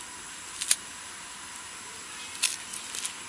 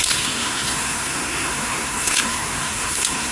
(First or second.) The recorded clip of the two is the first